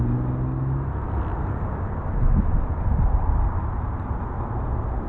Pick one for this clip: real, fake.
real